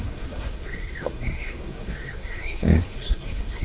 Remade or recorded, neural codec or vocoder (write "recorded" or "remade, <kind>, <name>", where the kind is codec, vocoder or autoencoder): remade, codec, SNAC